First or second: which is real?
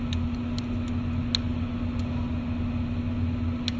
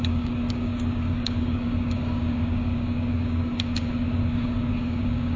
first